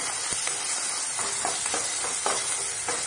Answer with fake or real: real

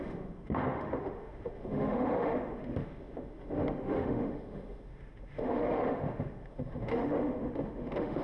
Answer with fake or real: fake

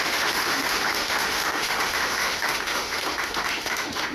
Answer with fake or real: fake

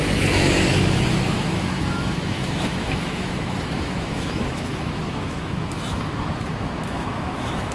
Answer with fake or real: fake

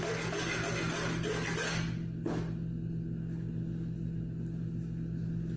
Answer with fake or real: real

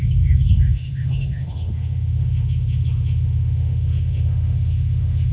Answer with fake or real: fake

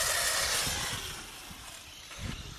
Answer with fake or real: real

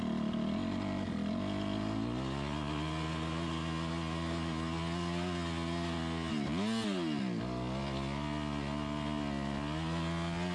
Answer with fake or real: real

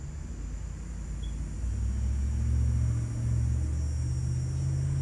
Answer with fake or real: real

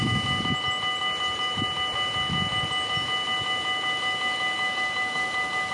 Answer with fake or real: real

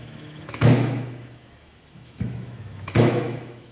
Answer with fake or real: fake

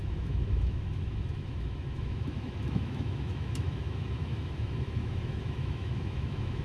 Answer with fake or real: fake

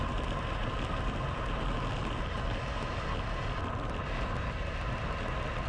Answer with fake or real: real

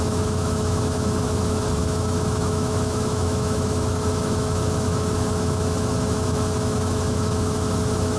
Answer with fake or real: fake